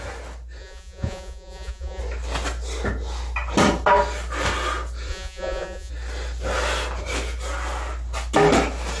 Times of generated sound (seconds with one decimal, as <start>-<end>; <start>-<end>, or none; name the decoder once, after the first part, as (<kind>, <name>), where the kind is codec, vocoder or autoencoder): 0.6-2.0 (vocoder, Vocos); 5.1-5.9